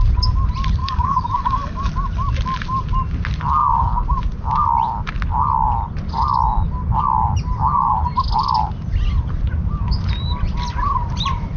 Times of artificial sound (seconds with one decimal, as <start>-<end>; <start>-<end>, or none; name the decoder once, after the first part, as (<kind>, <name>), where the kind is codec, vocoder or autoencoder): 0.8-1.9 (codec, DAC)